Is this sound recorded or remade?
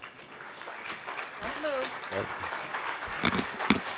remade